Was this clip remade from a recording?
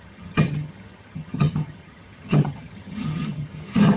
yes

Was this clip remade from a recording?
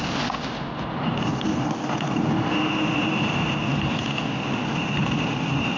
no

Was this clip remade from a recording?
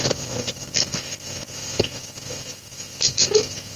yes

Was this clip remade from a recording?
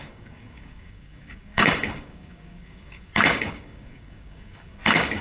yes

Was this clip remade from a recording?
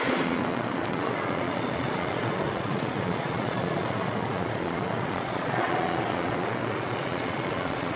yes